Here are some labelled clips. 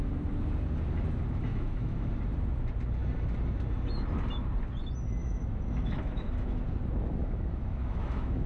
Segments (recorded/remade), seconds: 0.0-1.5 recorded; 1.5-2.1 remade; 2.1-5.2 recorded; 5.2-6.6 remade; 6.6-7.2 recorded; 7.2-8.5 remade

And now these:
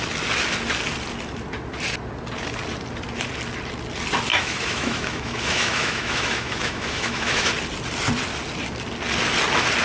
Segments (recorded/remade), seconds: 0.0-4.3 recorded; 4.3-7.5 remade; 7.5-9.8 recorded

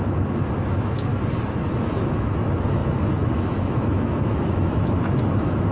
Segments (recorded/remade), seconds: 0.0-1.1 remade; 1.1-1.7 recorded; 1.7-5.7 remade

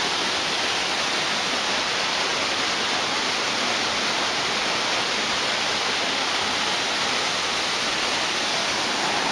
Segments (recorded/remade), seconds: 0.0-9.3 recorded

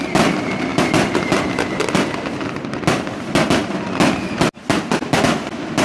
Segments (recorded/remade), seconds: 0.0-5.8 recorded

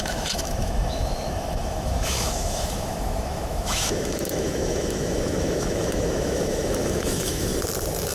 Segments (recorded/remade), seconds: 0.0-7.5 remade; 7.5-8.1 recorded

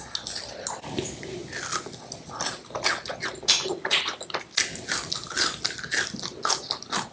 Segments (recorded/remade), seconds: 0.0-7.1 recorded

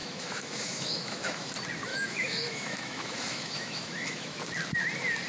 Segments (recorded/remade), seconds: 0.0-1.5 remade; 1.5-1.9 recorded; 1.9-4.4 remade; 4.4-5.3 recorded